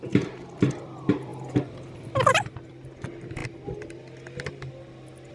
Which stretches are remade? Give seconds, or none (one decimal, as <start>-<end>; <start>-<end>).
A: none